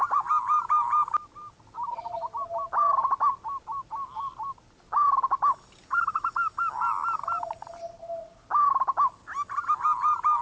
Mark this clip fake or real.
real